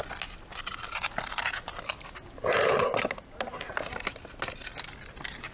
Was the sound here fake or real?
real